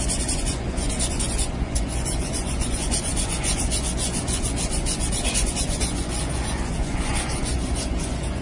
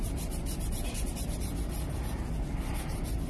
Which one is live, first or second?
second